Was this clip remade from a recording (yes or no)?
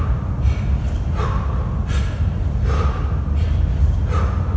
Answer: no